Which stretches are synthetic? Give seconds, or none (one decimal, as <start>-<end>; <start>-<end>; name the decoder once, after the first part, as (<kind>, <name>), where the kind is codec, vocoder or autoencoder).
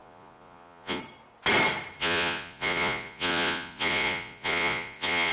0.0-1.0 (vocoder, Vocos); 2.0-5.3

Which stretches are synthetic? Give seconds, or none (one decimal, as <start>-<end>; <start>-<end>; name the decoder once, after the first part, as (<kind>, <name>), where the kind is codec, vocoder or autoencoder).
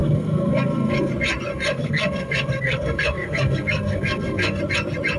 0.0-1.1 (codec, SNAC); 1.5-4.6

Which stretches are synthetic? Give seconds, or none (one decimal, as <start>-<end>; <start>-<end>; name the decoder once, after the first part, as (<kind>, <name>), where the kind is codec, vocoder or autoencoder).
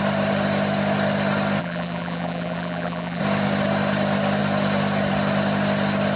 1.6-3.2 (vocoder, BigVGAN v2)